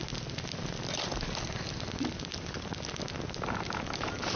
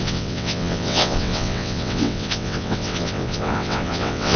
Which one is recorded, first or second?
first